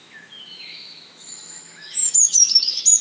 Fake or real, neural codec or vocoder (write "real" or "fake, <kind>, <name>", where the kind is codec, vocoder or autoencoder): fake, autoencoder, DAC-VAE